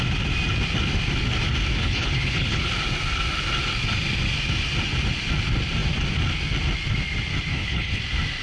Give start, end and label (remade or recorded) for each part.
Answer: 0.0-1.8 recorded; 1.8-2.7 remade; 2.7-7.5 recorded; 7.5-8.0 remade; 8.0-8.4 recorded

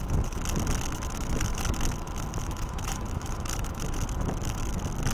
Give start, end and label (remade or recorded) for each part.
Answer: 0.0-1.1 recorded; 1.1-1.6 remade; 1.6-2.4 recorded; 2.4-4.0 remade; 4.0-5.1 recorded

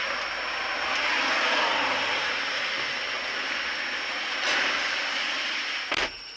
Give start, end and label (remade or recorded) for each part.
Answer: 0.0-6.4 recorded